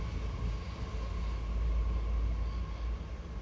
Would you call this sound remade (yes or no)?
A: no